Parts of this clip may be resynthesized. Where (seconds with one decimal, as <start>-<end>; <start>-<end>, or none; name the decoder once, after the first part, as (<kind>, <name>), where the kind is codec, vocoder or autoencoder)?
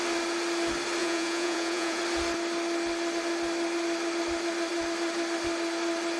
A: 1.0-2.0 (vocoder, Vocos)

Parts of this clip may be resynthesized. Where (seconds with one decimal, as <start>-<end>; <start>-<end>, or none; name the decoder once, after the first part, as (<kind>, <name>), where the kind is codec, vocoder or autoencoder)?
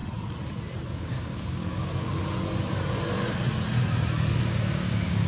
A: 0.9-2.2 (codec, DAC); 4.4-5.3